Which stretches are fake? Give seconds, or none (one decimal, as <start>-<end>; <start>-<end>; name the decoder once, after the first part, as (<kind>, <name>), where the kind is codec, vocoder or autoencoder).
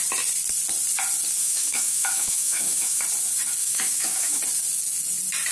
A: 1.4-3.0 (autoencoder, DAC-VAE); 3.6-4.4